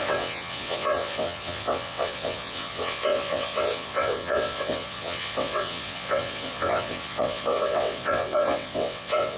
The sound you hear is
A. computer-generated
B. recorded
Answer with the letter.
A